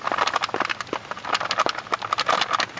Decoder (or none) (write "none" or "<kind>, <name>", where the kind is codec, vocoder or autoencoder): none